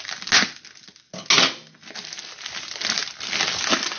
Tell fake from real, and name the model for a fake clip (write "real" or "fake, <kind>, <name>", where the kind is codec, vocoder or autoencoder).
real